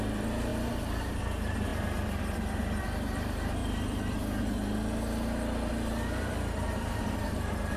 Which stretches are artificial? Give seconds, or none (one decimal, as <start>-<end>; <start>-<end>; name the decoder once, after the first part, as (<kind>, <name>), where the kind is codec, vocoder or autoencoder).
0.0-3.6 (vocoder, BigVGAN v2); 5.7-7.8